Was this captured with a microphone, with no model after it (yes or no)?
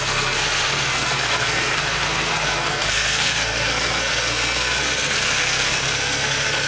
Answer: no